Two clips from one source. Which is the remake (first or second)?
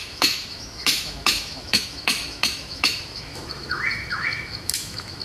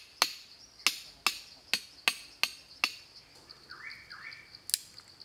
first